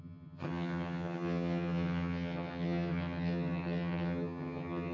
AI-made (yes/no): yes